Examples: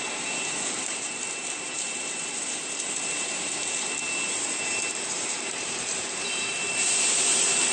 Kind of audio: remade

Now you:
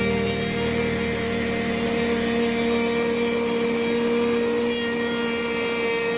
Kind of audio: recorded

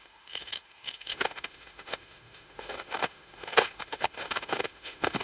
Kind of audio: remade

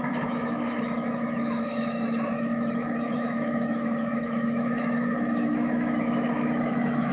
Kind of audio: remade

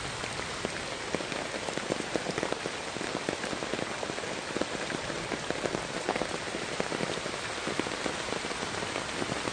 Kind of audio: recorded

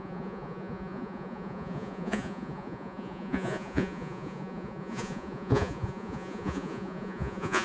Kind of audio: remade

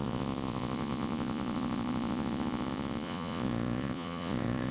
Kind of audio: remade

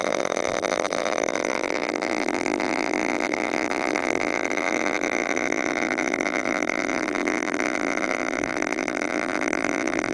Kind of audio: remade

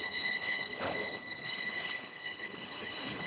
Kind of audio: remade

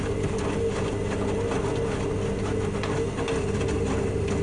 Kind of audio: recorded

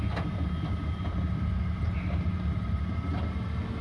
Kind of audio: recorded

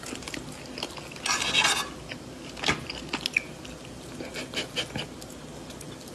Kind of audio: recorded